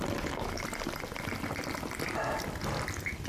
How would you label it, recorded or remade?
recorded